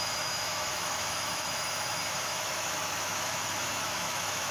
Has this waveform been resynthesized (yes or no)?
yes